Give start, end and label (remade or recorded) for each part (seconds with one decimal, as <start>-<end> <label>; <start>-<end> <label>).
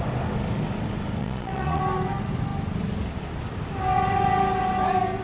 0.0-1.2 recorded; 1.2-1.8 remade; 1.8-5.2 recorded